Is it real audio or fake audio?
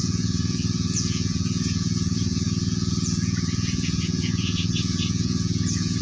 fake